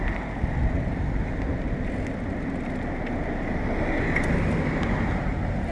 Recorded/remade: recorded